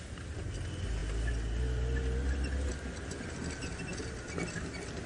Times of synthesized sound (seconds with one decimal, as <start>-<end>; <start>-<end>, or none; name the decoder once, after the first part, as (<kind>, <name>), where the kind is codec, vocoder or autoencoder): none